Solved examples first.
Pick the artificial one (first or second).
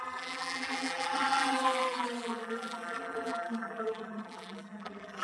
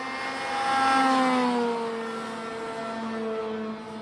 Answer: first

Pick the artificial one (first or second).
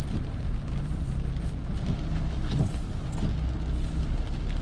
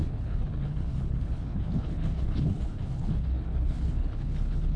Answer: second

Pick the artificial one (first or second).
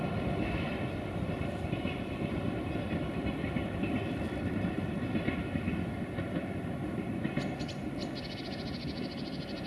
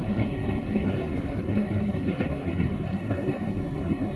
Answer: second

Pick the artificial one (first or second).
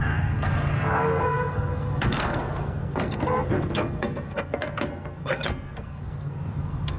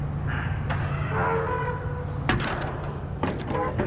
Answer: first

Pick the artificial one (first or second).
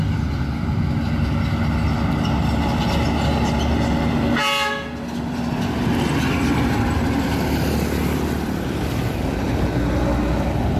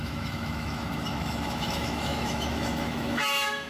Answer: second